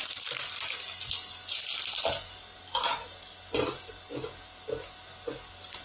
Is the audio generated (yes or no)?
no